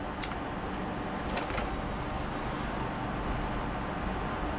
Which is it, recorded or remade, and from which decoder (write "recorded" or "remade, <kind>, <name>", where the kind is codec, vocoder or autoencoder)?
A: recorded